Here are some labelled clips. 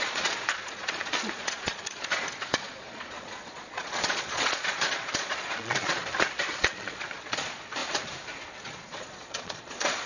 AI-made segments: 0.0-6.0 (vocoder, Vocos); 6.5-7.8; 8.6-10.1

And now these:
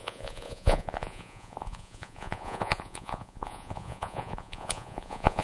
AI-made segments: 0.0-5.4 (vocoder, Vocos)

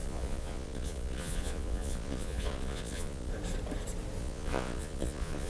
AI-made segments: 0.0-3.3 (vocoder, Vocos); 4.2-5.5

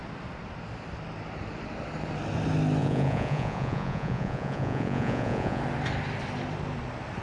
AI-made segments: 2.8-5.6 (vocoder, Vocos)

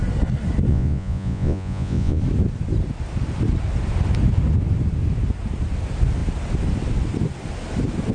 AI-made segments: 0.7-2.2 (vocoder, Vocos)

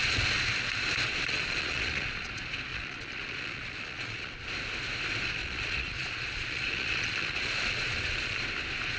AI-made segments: 1.2-2.3 (vocoder, Vocos); 2.7-4.3; 5.4-8.4

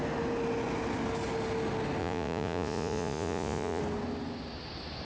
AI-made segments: 2.0-3.8 (vocoder, Vocos)

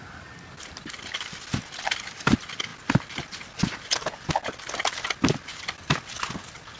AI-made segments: none